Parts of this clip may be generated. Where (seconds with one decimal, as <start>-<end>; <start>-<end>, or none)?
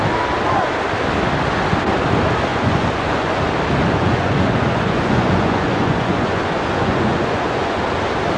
2.5-3.4; 3.8-7.8